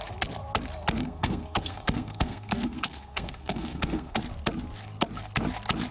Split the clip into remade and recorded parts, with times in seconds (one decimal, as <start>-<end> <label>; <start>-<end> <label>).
0.0-1.0 recorded; 1.0-4.2 remade; 4.2-5.9 recorded